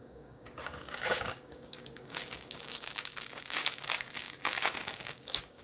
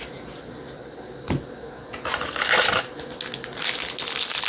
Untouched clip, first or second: second